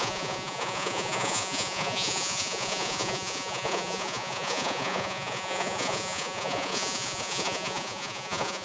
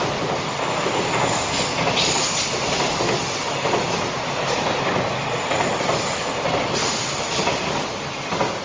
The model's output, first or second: first